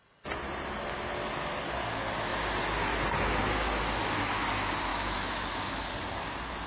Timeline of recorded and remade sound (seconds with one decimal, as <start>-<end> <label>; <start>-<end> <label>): 0.0-4.9 recorded; 4.9-5.9 remade; 5.9-6.7 recorded